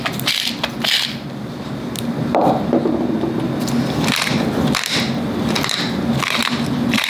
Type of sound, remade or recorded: remade